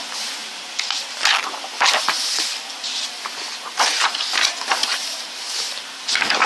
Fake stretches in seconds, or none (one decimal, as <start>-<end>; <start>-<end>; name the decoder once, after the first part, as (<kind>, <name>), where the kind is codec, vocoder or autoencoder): 4.8-5.7 (vocoder, BigVGAN v2)